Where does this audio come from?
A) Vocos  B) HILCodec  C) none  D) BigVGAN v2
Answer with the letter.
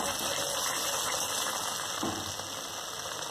C